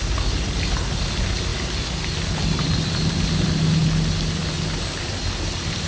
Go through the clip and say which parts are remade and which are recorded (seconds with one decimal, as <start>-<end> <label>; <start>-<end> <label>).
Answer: 0.0-5.9 recorded